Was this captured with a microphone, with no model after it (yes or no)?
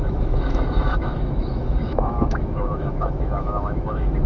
no